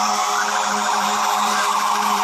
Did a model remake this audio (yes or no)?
yes